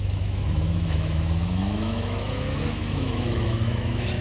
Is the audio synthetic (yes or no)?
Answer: yes